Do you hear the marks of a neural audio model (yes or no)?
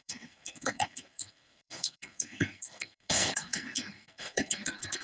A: yes